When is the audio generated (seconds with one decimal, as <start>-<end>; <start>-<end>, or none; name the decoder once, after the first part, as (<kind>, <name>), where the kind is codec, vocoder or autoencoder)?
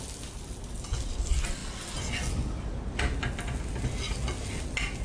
none